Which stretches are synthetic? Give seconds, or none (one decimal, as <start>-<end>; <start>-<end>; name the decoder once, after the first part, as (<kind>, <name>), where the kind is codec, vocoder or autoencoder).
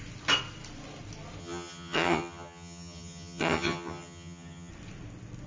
1.4-4.7 (vocoder, HiFi-GAN)